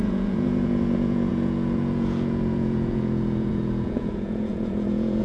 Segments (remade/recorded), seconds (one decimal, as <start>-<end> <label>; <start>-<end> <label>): 0.0-5.2 remade

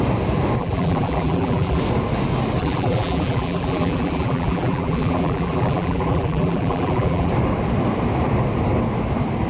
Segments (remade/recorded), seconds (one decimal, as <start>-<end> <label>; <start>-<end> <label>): 0.0-0.6 recorded; 0.6-1.8 remade; 1.8-2.6 recorded; 2.6-7.3 remade; 7.3-9.5 recorded

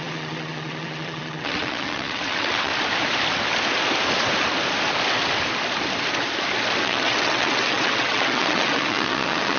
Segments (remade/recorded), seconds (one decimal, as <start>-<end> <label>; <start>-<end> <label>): 0.0-2.7 remade; 2.7-6.8 recorded; 6.8-9.6 remade

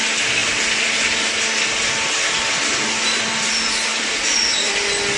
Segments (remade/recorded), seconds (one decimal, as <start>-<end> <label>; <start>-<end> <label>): 0.0-3.9 recorded; 3.9-4.7 remade; 4.7-5.2 recorded

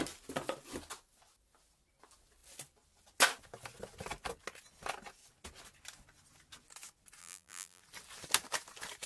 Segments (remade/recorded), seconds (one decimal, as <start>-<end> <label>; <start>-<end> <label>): 0.0-7.2 recorded; 7.2-7.8 remade; 7.8-9.1 recorded